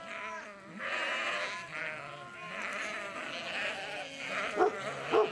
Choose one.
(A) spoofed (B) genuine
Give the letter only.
B